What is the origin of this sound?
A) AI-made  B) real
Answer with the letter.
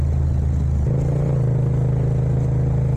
B